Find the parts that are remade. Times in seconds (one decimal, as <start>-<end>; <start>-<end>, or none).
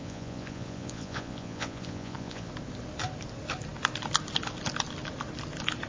0.0-2.5